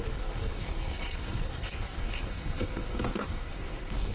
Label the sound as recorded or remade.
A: remade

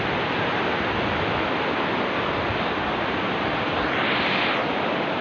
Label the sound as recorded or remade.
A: recorded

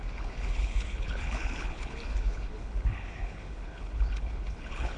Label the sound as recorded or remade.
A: remade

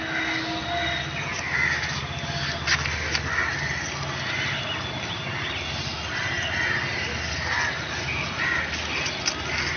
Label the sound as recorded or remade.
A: recorded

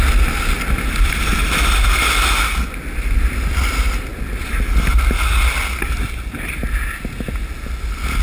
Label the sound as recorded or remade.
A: recorded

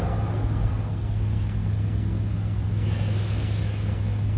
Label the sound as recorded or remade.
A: remade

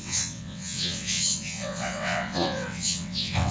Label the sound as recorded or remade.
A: remade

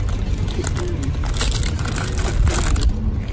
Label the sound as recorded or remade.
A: recorded